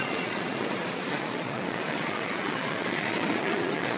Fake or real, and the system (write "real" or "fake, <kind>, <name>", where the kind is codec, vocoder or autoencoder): fake, vocoder, Vocos